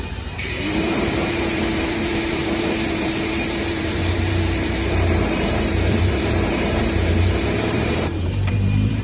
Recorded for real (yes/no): no